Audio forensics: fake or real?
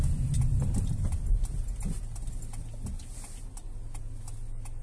real